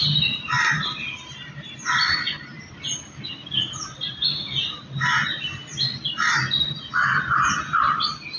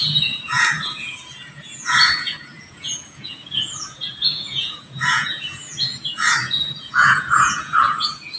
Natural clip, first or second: first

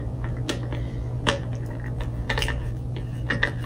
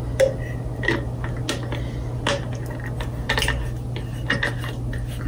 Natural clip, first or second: second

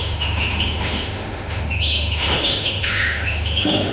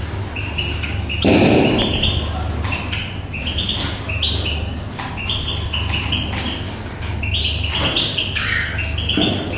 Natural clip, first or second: second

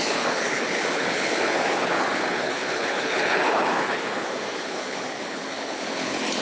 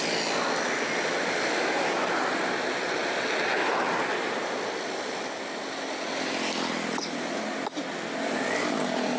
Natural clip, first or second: second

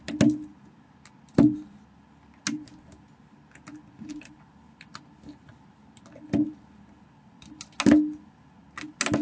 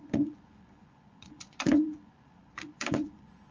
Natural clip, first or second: first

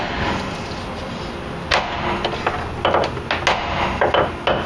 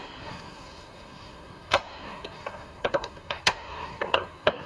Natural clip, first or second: first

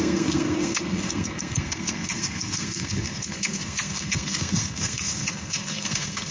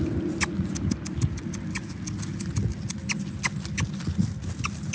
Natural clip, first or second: second